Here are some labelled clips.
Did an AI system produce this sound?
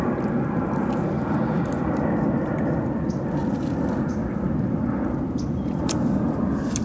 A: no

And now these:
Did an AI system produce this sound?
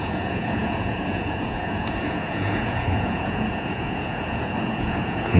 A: yes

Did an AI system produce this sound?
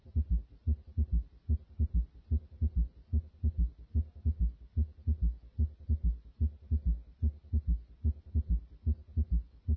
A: no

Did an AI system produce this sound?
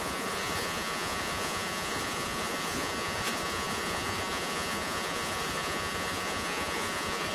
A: yes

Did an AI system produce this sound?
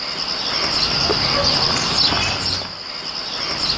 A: no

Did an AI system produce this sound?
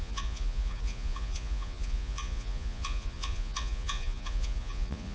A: yes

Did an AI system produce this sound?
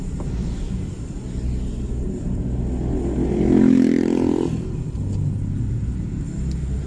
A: no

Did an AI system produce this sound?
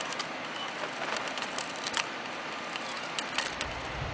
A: no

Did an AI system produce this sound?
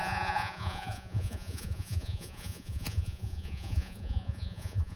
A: yes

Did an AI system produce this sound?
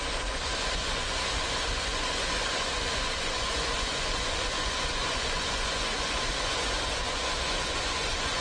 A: yes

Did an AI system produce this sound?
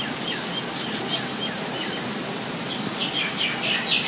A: no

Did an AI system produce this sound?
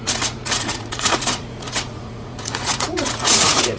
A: yes